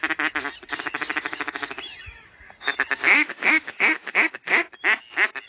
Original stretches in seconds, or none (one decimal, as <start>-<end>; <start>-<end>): 0.0-3.1; 4.7-5.5